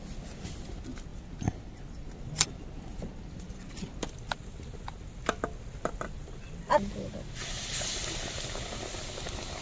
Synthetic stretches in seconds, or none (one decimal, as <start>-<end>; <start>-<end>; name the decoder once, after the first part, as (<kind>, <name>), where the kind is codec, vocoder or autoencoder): none